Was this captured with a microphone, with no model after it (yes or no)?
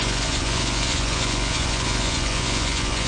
no